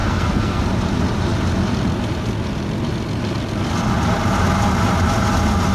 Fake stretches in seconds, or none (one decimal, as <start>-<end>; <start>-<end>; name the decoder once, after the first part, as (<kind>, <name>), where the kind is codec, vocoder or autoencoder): 0.0-0.6 (codec, SNAC)